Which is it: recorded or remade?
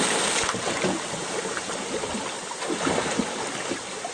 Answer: recorded